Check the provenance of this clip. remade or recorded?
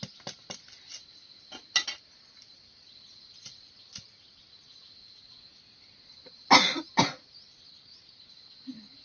recorded